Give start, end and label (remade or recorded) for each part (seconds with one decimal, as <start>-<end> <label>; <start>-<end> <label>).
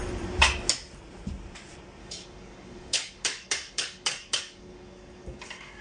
0.0-2.0 recorded; 2.0-5.8 remade